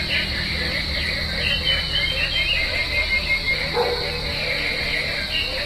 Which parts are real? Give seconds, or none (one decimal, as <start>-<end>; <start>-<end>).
0.0-5.7